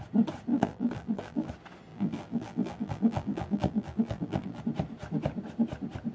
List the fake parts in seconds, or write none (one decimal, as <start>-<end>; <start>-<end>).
0.5-1.5; 1.9-4.6